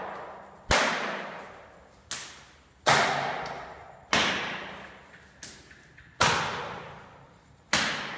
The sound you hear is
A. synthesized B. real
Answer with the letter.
B